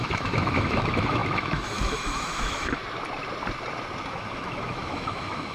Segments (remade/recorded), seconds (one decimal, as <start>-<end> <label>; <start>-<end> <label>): 0.0-2.8 remade; 2.8-4.1 recorded; 4.1-5.5 remade